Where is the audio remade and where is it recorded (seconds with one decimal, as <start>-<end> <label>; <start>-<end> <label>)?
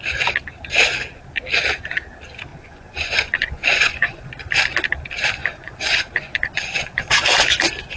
0.0-2.5 recorded; 2.5-4.3 remade; 4.3-5.4 recorded; 5.4-7.1 remade; 7.1-8.0 recorded